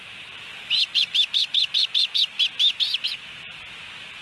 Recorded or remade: recorded